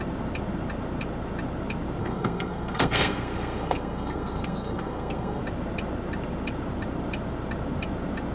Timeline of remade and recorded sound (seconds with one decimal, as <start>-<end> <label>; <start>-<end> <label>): 0.0-2.0 recorded; 2.0-5.4 remade; 5.4-8.3 recorded